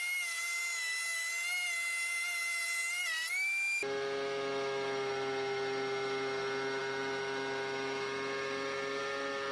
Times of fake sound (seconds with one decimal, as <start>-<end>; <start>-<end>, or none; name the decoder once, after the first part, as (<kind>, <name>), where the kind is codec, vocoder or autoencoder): none